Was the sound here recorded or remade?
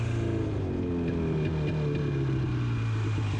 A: recorded